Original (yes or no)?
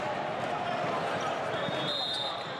yes